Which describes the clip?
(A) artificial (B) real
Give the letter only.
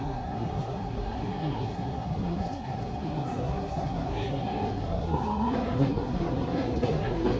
A